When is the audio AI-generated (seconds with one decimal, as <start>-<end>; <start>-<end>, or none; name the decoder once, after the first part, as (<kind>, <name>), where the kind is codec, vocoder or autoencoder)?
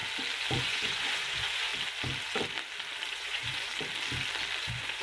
0.6-1.7 (vocoder, Vocos); 3.1-3.7; 4.6-5.0